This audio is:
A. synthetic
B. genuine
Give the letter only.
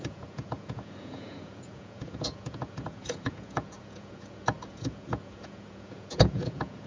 A